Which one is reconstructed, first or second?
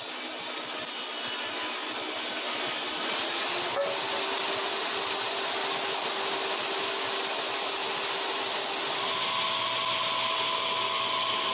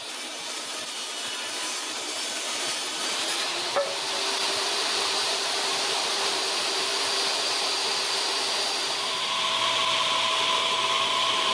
second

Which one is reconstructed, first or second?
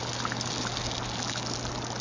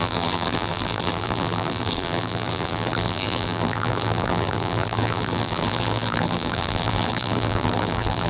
second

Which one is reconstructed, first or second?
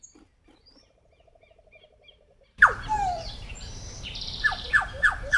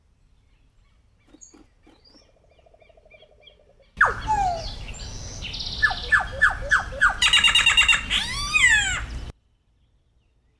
first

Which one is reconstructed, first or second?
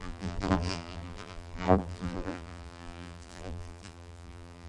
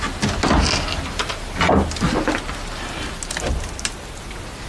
first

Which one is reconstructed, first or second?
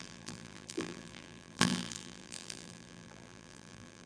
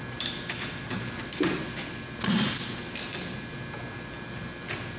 first